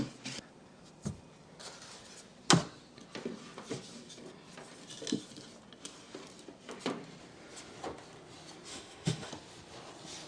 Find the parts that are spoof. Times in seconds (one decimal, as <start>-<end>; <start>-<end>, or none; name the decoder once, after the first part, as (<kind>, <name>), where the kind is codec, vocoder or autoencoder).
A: 8.7-9.3 (autoencoder, DAC-VAE)